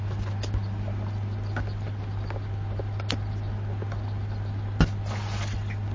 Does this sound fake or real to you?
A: real